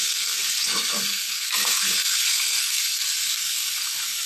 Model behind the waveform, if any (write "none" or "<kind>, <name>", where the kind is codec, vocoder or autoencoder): codec, SNAC